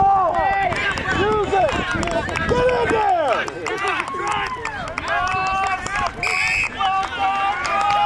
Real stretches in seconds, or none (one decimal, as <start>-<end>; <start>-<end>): 0.0-8.1